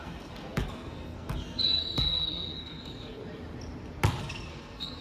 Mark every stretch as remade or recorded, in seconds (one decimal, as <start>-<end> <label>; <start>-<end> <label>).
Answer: 0.0-3.2 remade; 3.2-4.2 recorded; 4.2-5.0 remade